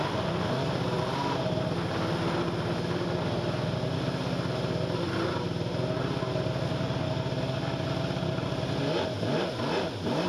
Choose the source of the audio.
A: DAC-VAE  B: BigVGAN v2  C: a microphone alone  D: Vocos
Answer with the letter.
C